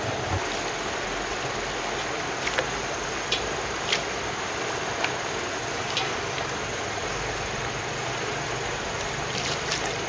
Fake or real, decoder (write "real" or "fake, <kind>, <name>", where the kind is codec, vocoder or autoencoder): real